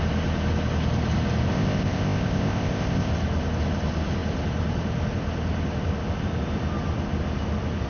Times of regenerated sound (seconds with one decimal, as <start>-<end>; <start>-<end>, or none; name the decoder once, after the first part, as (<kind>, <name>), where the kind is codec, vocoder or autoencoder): 1.5-3.1 (codec, ZipCodec)